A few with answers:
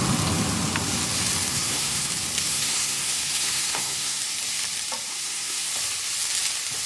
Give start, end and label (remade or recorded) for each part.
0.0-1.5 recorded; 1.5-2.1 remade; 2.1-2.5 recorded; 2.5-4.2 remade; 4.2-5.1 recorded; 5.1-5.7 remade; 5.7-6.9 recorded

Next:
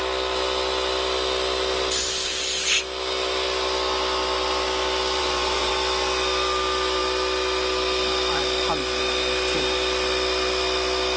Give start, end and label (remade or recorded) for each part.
0.0-5.2 recorded; 5.2-5.7 remade; 5.7-11.2 recorded

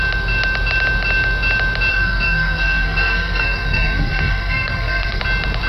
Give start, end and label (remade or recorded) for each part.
0.0-1.9 recorded; 1.9-5.2 remade; 5.2-5.7 recorded